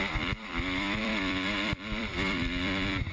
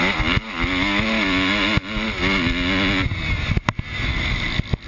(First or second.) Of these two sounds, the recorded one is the second